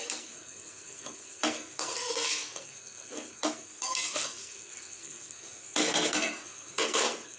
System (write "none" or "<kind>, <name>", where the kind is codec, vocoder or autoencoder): codec, SNAC